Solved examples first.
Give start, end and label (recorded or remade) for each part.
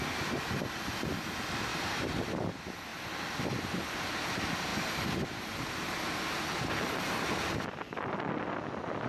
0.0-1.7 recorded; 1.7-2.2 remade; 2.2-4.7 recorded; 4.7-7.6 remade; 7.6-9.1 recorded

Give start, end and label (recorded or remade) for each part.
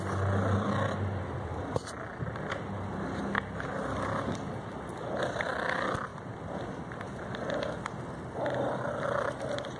0.0-9.8 recorded